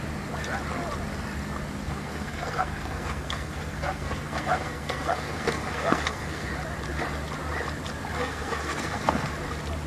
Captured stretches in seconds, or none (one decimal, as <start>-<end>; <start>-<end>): 0.0-1.8; 6.5-8.2; 9.3-9.9

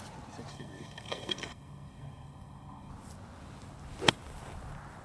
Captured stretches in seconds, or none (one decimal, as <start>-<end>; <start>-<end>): 0.0-0.5; 2.9-5.0

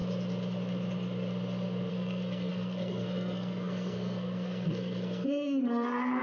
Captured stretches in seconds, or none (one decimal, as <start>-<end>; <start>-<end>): 0.0-1.9

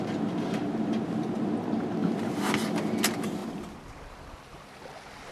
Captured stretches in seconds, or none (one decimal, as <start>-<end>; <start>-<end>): 0.0-5.3

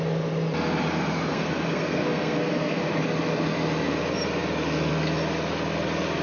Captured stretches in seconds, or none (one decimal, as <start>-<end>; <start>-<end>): 0.0-1.3; 2.8-6.2

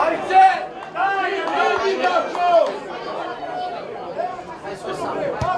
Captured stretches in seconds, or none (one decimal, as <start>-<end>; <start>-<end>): 0.0-5.6

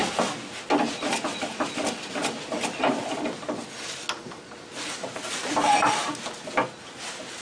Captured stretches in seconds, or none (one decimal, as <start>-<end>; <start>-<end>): 0.0-7.4